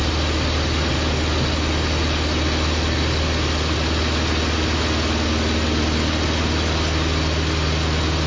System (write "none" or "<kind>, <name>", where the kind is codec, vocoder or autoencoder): none